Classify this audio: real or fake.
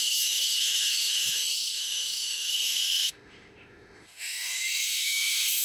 fake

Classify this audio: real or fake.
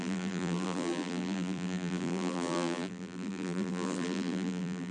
fake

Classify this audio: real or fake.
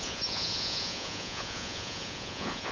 fake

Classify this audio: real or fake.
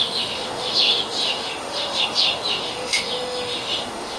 fake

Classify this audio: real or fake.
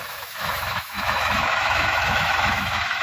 fake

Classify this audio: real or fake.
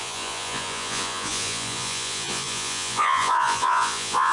fake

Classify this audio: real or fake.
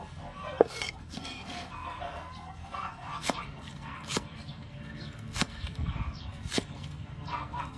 fake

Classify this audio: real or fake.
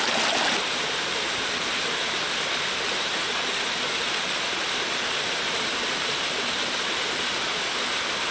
real